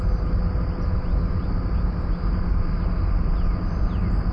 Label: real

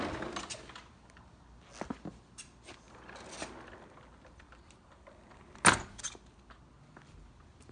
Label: real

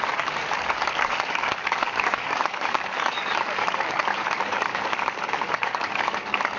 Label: fake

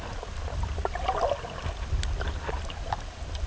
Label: real